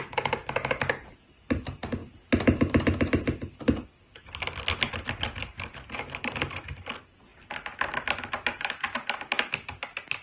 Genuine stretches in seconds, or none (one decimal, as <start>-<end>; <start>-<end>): 0.0-5.4; 6.4-10.2